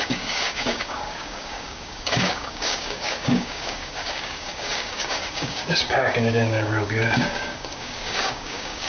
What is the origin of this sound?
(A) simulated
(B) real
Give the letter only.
A